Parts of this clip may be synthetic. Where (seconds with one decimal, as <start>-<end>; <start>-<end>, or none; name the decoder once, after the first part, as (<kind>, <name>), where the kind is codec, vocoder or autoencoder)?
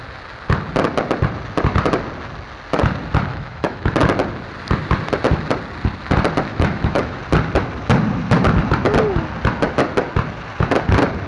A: 3.3-3.9 (autoencoder, DAC-VAE); 6.5-7.2